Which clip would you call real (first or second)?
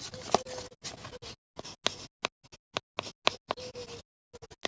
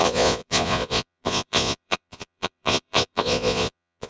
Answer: first